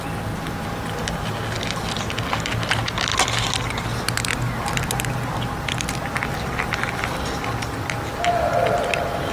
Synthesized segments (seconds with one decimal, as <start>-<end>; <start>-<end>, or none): none